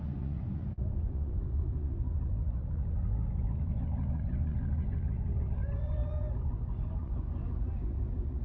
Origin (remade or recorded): remade